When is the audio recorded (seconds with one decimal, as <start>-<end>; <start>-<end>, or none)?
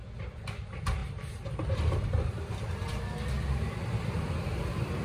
1.0-2.3